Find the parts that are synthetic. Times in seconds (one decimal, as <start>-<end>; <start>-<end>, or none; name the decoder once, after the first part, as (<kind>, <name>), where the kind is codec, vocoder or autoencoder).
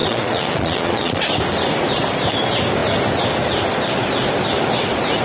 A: 0.0-1.2 (vocoder, Vocos)